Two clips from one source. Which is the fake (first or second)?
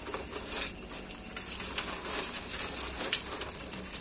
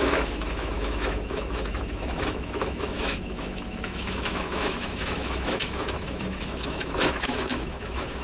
second